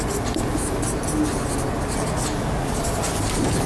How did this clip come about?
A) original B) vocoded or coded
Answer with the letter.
A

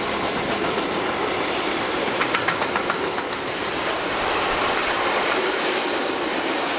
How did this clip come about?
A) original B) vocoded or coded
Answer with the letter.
A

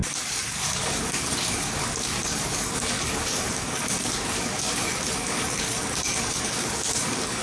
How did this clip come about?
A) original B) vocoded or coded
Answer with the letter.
B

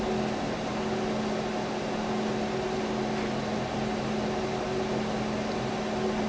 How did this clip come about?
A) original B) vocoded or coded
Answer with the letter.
A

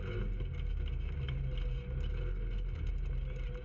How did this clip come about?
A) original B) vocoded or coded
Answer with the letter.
A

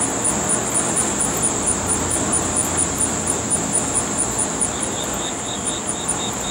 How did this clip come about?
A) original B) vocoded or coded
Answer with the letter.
A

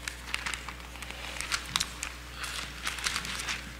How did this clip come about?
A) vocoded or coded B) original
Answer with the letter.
B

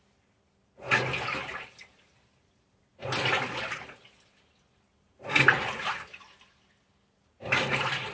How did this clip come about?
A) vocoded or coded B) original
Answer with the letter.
B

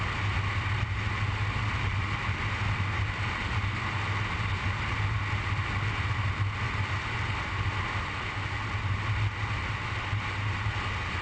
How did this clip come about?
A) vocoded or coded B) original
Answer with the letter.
B